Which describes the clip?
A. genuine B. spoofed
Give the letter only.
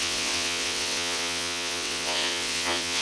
B